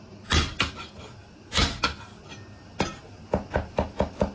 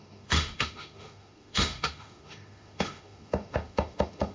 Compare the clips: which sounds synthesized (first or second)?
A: second